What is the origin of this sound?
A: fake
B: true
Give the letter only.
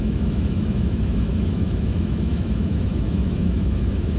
A